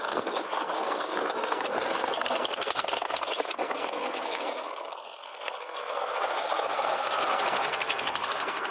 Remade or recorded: remade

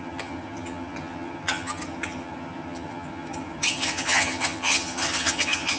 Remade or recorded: remade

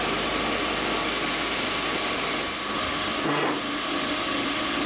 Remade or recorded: recorded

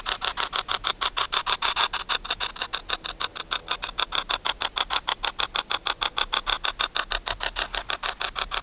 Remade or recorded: recorded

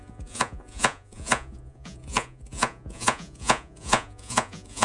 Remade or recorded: remade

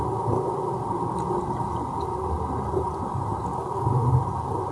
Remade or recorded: recorded